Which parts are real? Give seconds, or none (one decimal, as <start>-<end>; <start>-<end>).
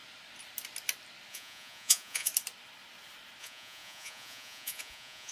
0.0-1.3; 2.3-3.4